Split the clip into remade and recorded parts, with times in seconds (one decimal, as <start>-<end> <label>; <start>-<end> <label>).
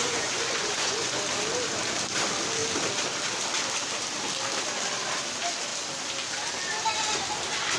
0.0-1.2 remade; 1.2-7.8 recorded